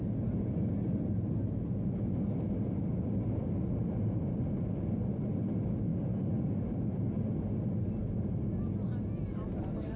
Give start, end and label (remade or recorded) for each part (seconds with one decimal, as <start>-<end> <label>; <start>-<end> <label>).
0.0-10.0 recorded